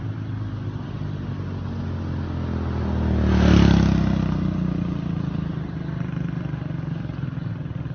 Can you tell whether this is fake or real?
real